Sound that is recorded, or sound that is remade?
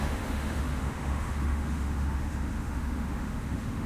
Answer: remade